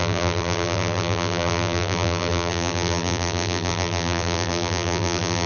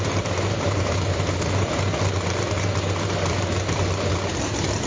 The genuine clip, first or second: second